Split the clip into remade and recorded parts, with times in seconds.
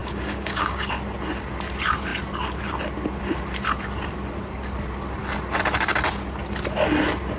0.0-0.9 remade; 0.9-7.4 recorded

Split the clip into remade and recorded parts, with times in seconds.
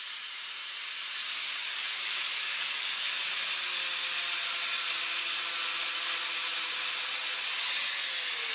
0.0-1.2 recorded; 1.2-3.1 remade; 3.1-8.5 recorded